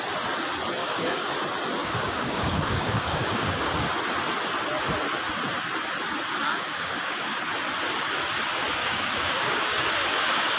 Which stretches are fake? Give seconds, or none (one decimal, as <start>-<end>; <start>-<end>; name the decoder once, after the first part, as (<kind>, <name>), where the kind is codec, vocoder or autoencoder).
0.8-1.3 (codec, DAC); 1.8-3.7; 6.5-7.4; 8.8-9.9

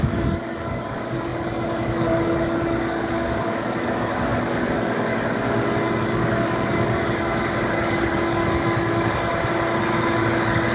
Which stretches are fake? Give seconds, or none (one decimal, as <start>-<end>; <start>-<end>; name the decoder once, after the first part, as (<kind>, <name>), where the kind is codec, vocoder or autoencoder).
0.0-9.3 (codec, DAC); 9.8-10.7